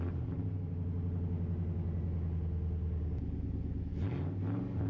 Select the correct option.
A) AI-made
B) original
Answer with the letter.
B